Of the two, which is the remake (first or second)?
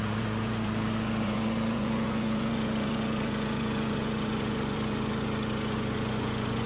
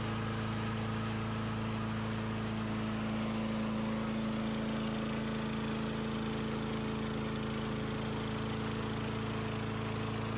first